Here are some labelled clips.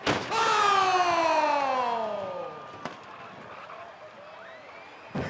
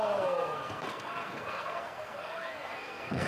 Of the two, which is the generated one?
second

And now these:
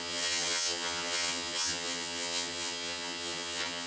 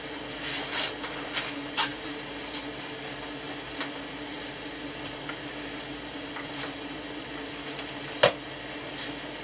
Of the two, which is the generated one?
first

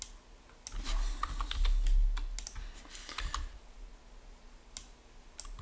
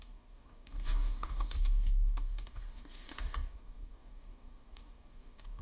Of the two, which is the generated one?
second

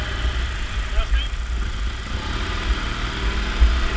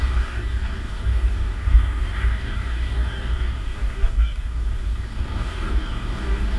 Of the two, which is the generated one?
second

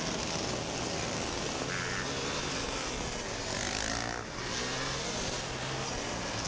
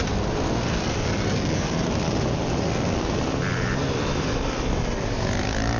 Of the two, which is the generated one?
second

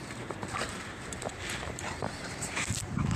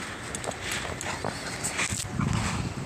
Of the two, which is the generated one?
first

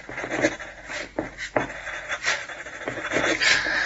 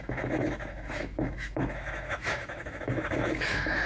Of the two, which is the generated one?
second